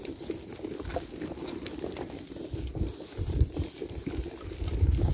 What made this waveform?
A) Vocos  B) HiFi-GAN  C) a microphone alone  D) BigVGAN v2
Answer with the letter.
C